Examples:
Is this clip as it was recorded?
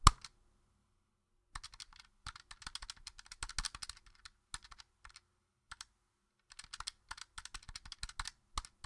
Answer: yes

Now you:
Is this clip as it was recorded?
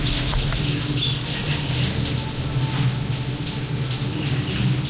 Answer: yes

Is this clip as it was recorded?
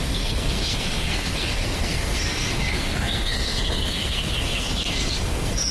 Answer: no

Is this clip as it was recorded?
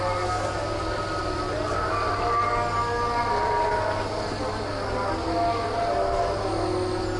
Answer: yes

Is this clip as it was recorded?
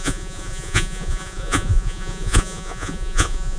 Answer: no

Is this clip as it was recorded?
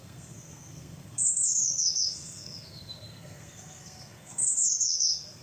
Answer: no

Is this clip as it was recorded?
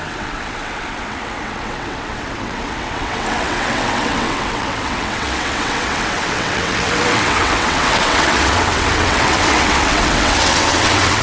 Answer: no